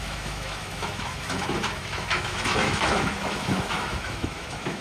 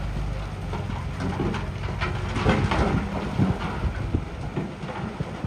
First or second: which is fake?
first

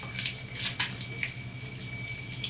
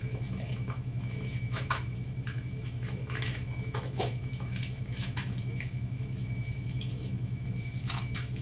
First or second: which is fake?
second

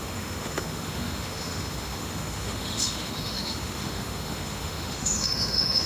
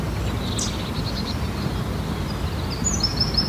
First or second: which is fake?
first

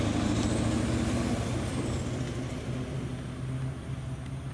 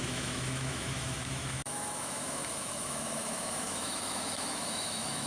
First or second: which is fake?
second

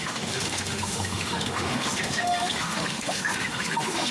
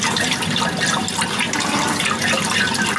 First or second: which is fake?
first